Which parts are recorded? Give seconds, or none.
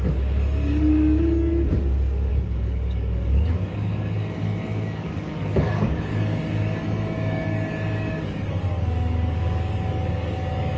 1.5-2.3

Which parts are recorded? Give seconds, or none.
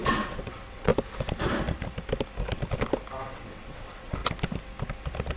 0.9-3.1; 4.2-5.4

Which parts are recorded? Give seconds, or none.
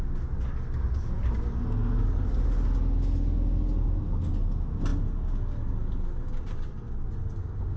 0.0-7.8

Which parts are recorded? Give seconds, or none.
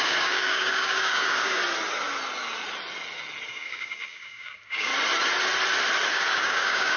1.6-3.5; 4.9-6.1